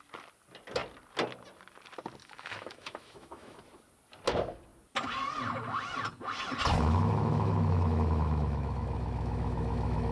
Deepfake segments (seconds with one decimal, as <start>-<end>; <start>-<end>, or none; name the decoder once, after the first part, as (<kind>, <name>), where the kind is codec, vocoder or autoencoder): 2.2-3.6 (autoencoder, DAC-VAE); 6.7-10.1